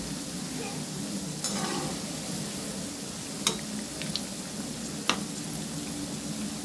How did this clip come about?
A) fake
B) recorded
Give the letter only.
B